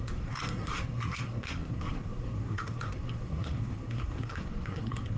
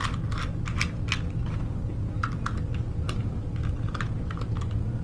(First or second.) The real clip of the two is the second